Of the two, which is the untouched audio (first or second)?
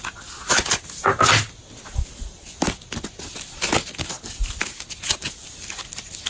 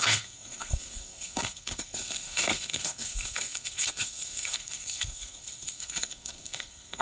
first